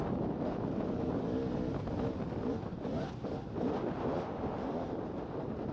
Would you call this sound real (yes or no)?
yes